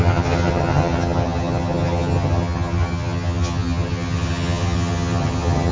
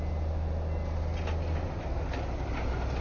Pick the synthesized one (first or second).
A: first